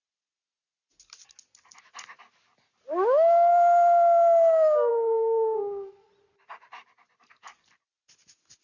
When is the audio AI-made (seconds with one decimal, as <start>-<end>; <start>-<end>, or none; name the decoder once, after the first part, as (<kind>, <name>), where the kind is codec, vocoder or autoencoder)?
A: 4.9-6.1 (codec, SNAC)